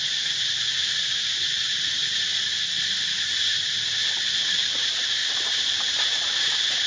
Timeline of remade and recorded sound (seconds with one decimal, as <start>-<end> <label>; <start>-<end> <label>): 0.0-2.0 remade; 2.0-4.7 recorded; 4.7-6.9 remade